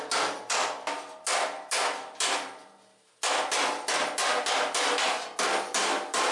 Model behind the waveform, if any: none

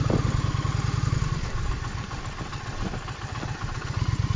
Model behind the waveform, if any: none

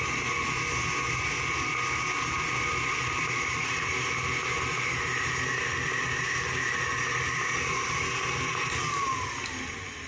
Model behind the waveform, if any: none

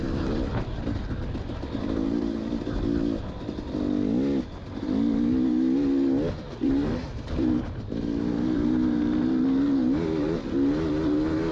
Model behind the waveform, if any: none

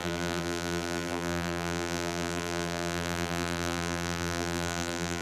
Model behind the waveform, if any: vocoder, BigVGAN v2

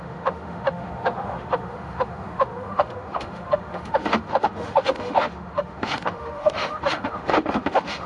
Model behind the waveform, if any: autoencoder, DAC-VAE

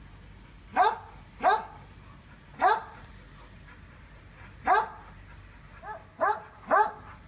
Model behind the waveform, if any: none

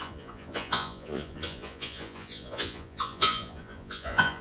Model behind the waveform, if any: vocoder, Vocos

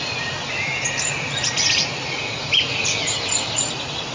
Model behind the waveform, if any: vocoder, BigVGAN v2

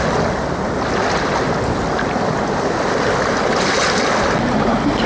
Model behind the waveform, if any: none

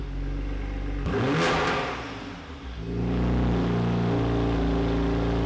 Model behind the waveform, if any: none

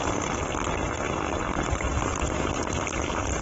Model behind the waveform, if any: none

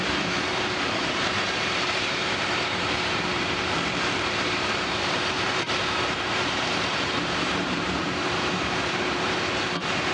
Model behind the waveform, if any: vocoder, BigVGAN v2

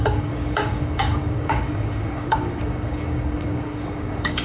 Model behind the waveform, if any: codec, DAC